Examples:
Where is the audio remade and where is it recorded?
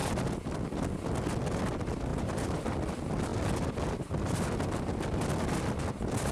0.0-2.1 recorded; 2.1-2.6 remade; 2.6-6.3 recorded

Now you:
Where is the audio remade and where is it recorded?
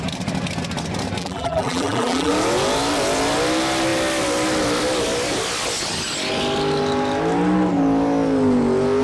0.0-1.2 recorded; 1.2-2.3 remade; 2.3-9.0 recorded